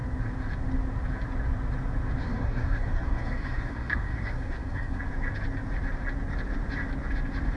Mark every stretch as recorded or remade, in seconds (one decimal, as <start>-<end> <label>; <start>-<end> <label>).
0.0-2.2 recorded; 2.2-5.0 remade; 5.0-7.6 recorded